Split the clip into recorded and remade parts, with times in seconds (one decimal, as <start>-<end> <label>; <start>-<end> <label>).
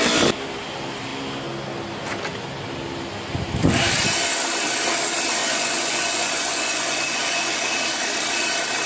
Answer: 0.0-5.4 recorded; 5.4-7.7 remade; 7.7-8.9 recorded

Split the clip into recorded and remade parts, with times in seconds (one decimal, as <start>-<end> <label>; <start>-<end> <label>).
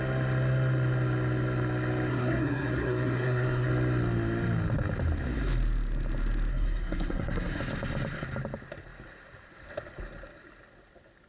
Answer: 0.0-2.1 recorded; 2.1-3.7 remade; 3.7-6.5 recorded; 6.5-7.6 remade; 7.6-11.3 recorded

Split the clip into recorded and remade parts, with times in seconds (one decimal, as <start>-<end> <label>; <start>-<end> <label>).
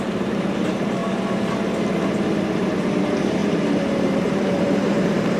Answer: 0.0-1.0 remade; 1.0-2.5 recorded; 2.5-3.4 remade; 3.4-3.9 recorded; 3.9-5.4 remade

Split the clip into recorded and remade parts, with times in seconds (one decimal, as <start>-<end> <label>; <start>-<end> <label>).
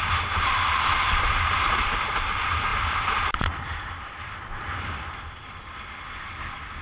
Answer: 0.0-6.8 recorded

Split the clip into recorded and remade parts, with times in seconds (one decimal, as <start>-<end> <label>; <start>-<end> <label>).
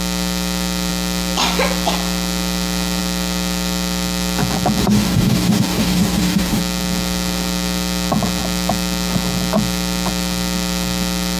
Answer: 0.0-4.8 recorded; 4.8-6.6 remade; 6.6-11.4 recorded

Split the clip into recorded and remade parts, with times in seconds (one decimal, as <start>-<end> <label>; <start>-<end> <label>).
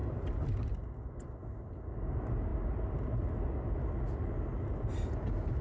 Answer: 0.0-5.6 recorded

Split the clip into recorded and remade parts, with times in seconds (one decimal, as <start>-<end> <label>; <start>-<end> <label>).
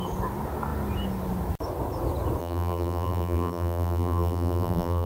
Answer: 0.0-2.4 recorded; 2.4-5.1 remade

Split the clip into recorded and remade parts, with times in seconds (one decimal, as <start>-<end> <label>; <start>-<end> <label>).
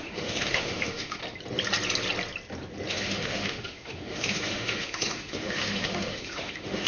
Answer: 0.0-1.2 remade; 1.2-2.9 recorded; 2.9-6.9 remade